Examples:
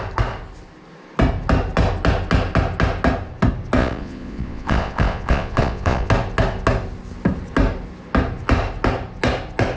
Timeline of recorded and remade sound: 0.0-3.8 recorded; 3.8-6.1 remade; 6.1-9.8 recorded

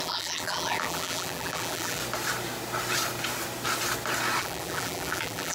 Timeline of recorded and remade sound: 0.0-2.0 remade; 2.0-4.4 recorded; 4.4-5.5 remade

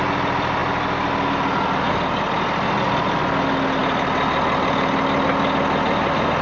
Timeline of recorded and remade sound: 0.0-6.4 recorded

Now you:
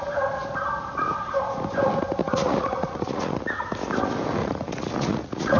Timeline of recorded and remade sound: 0.0-2.2 recorded; 2.2-3.4 remade; 3.4-4.4 recorded; 4.4-5.6 remade

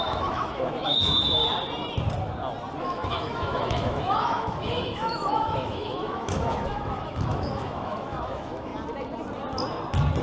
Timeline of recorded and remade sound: 0.0-1.4 remade; 1.4-2.8 recorded; 2.8-8.7 remade; 8.7-10.2 recorded